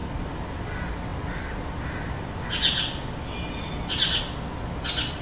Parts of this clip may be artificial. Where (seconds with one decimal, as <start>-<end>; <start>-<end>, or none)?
none